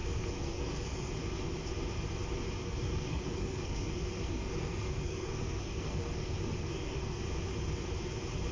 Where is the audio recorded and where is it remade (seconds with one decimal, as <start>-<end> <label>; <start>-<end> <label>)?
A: 0.0-1.1 remade; 1.1-2.6 recorded; 2.6-7.2 remade; 7.2-8.5 recorded